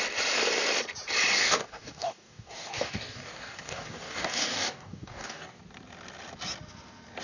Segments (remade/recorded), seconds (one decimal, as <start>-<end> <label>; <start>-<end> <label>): 0.0-1.4 recorded; 1.4-5.6 remade; 5.6-7.2 recorded